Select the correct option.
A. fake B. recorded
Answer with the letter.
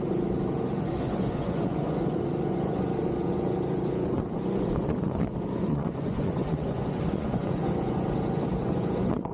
A